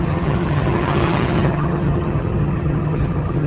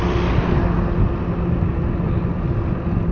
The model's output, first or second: first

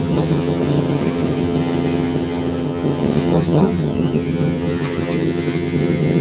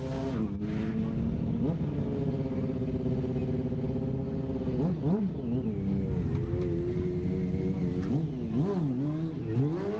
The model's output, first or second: first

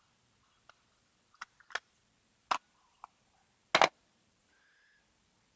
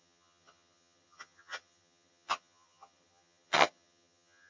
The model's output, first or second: second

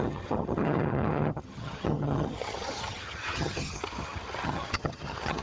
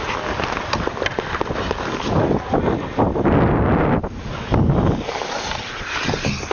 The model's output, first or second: first